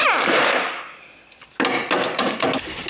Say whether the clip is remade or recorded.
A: recorded